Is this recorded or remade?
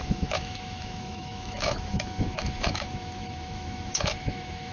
remade